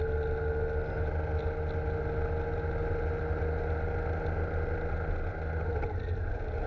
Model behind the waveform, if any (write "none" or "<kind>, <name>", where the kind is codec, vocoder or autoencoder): none